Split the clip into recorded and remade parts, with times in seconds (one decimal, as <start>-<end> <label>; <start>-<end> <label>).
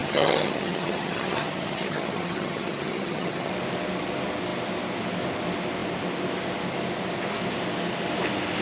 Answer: 0.0-3.5 remade; 3.5-8.6 recorded